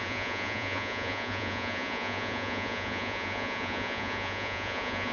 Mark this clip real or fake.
fake